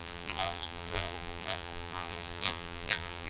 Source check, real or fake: fake